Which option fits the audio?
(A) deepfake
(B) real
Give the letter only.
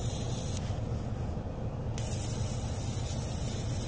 B